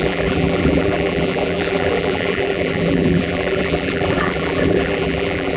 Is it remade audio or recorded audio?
remade